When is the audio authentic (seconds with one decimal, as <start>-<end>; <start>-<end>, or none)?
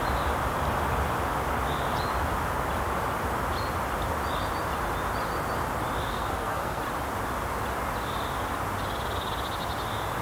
0.0-6.1; 6.8-10.2